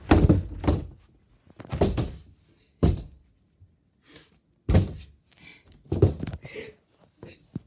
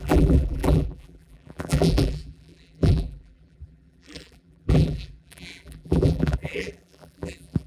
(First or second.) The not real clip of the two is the second